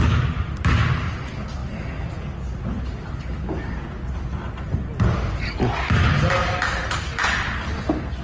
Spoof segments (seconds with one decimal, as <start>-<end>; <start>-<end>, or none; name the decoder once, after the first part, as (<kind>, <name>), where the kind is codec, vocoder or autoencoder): 6.4-7.1 (vocoder, BigVGAN v2)